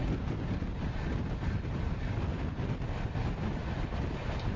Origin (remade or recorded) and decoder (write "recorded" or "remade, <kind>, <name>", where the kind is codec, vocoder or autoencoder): recorded